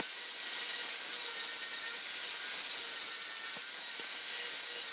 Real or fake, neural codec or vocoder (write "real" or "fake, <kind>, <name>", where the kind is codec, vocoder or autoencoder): real